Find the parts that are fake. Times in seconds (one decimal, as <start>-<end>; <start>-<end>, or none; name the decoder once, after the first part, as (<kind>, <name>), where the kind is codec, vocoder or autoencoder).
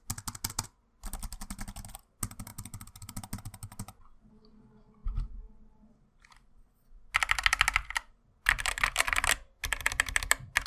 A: none